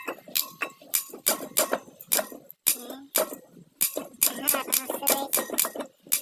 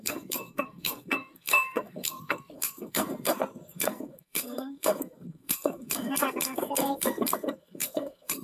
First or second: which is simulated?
second